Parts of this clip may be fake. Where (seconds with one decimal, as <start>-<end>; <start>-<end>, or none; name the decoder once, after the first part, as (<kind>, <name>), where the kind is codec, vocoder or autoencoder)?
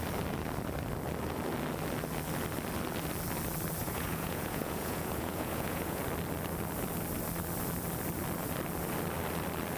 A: 3.8-6.0 (vocoder, Vocos)